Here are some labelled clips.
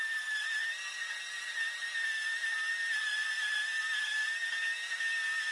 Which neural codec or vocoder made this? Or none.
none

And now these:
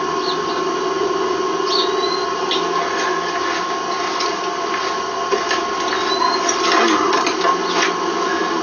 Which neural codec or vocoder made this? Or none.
none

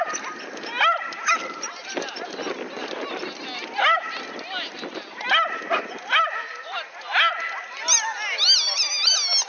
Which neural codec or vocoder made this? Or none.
none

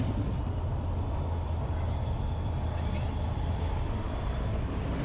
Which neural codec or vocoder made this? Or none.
none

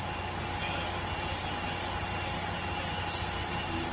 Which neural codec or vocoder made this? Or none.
none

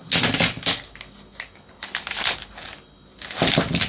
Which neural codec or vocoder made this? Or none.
none